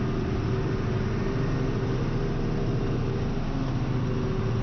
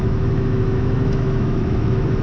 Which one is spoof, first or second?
second